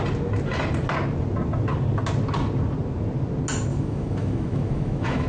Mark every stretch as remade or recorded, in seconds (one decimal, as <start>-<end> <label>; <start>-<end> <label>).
0.0-3.7 recorded; 3.7-5.3 remade